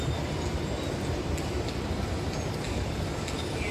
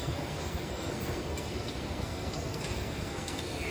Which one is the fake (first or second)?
second